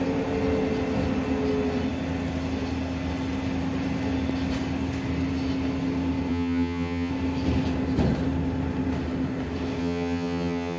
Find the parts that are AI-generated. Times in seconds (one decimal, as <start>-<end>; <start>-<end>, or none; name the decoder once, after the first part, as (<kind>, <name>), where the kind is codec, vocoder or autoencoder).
6.3-7.1 (vocoder, HiFi-GAN); 9.8-10.8